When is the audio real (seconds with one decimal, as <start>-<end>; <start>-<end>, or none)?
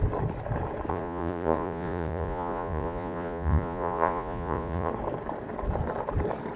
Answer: 0.0-0.9; 4.9-6.6